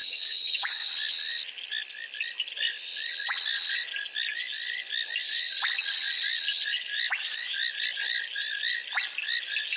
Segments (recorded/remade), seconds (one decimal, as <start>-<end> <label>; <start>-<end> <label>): 0.0-0.9 remade; 0.9-9.8 recorded